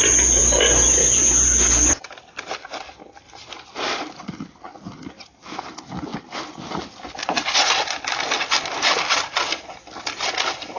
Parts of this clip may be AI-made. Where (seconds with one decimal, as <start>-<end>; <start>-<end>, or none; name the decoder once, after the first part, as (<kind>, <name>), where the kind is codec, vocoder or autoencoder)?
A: none